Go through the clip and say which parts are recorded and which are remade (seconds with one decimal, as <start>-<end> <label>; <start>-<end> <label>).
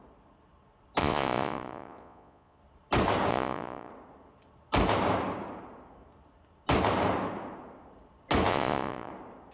0.0-1.0 recorded; 1.0-2.6 remade; 2.6-3.3 recorded; 3.3-3.9 remade; 3.9-8.5 recorded; 8.5-9.1 remade; 9.1-9.5 recorded